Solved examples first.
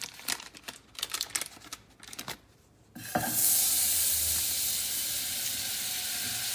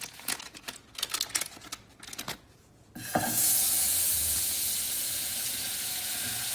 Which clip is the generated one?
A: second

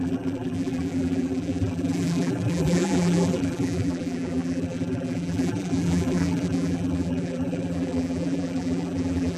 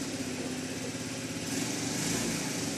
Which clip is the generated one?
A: first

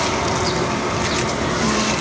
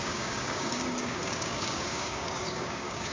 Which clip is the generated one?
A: second